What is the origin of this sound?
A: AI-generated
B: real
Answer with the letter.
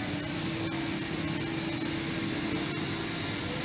B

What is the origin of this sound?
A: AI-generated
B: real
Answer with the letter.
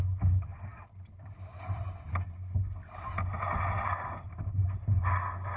B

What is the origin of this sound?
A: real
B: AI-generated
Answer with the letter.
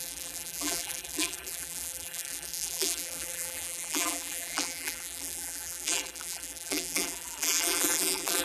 B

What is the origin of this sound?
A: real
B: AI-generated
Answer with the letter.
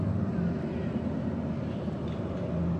A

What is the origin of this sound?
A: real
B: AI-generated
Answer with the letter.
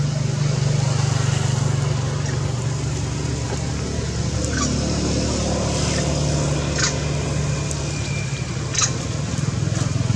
A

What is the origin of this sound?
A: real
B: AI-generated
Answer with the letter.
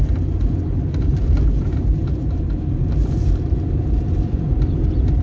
B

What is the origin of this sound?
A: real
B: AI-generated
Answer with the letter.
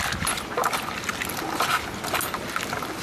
A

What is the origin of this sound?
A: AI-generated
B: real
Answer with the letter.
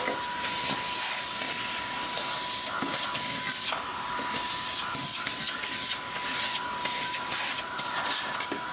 B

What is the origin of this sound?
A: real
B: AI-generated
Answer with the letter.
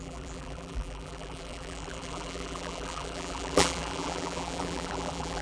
B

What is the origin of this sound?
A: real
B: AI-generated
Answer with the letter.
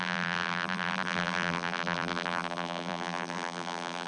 B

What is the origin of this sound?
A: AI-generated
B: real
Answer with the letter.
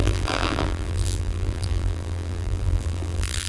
A